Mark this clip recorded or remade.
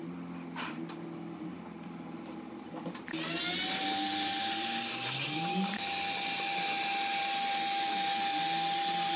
recorded